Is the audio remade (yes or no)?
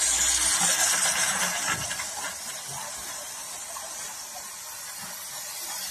no